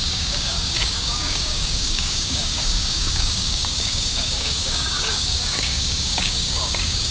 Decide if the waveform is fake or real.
fake